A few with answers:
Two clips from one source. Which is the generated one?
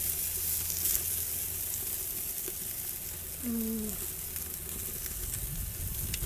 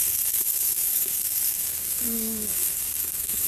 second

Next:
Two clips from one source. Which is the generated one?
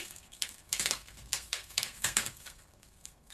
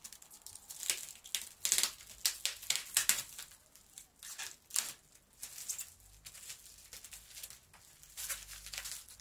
first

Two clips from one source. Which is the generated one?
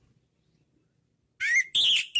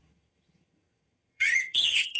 second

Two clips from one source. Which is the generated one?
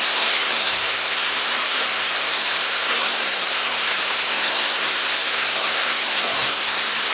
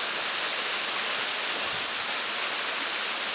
first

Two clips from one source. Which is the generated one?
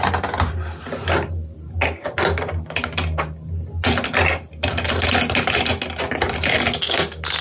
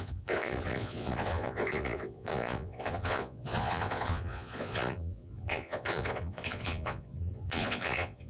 second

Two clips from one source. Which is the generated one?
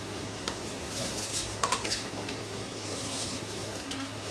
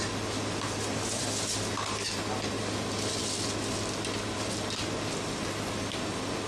first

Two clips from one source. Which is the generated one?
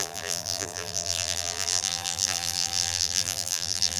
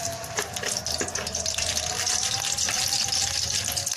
first